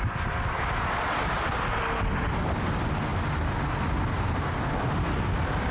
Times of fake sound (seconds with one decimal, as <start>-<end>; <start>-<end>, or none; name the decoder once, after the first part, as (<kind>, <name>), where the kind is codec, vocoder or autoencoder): none